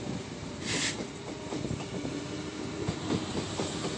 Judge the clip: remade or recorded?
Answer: recorded